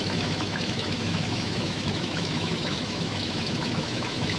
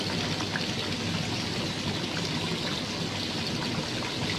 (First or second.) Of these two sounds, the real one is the second